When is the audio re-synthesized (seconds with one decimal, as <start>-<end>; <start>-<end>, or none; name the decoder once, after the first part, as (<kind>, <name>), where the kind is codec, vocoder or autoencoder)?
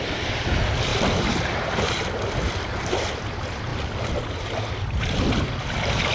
0.0-3.7 (vocoder, BigVGAN v2); 4.7-6.1